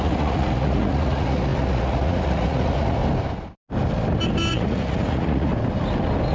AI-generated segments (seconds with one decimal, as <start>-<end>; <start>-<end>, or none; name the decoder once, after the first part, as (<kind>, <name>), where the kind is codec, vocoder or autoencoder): 0.0-3.0 (vocoder, Vocos); 4.5-5.5